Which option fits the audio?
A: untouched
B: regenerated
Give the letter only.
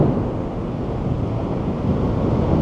A